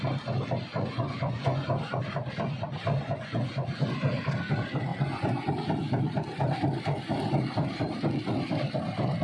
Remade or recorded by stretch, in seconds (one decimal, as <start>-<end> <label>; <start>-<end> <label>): 0.0-0.7 recorded; 0.7-2.0 remade; 2.0-3.0 recorded; 3.0-4.0 remade; 4.0-4.9 recorded; 4.9-5.5 remade; 5.5-9.2 recorded